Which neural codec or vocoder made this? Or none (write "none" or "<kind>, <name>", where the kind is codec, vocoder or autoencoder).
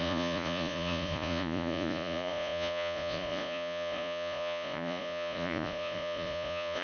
vocoder, Vocos